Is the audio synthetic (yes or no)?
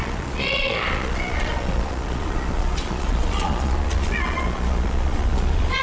yes